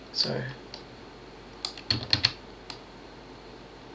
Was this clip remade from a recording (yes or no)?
no